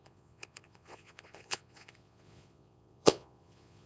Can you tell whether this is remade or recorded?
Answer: remade